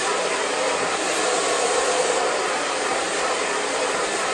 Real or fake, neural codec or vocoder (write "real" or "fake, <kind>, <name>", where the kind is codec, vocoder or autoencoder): fake, vocoder, BigVGAN v2